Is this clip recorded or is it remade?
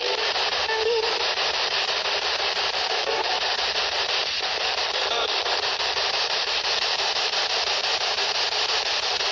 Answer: remade